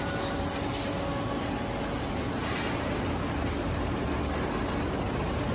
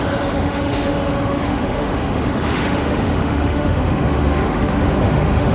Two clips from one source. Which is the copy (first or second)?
second